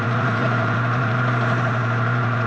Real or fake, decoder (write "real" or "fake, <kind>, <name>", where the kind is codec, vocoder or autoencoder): fake, vocoder, BigVGAN v2